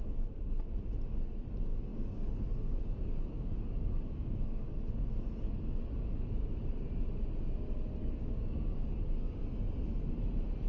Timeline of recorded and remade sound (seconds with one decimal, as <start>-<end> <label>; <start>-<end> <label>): 0.0-1.9 recorded; 1.9-4.8 remade; 4.8-8.0 recorded; 8.0-9.4 remade; 9.4-10.7 recorded